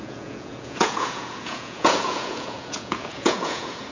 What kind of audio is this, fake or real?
fake